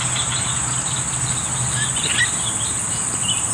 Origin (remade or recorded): recorded